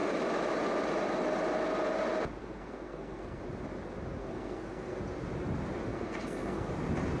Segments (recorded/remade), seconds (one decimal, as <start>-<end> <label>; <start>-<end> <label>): 0.0-2.4 recorded; 2.4-3.4 remade; 3.4-4.2 recorded; 4.2-5.0 remade; 5.0-5.9 recorded; 5.9-6.7 remade; 6.7-7.2 recorded